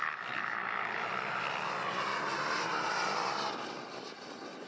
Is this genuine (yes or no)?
yes